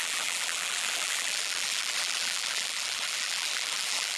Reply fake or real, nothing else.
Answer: fake